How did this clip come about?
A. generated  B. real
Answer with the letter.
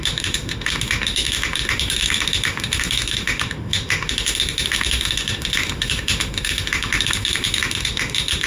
A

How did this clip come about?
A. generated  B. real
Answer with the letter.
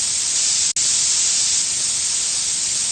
B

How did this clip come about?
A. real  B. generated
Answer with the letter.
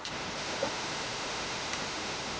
B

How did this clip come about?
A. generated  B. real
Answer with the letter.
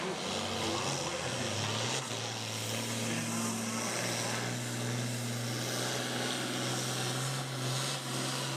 B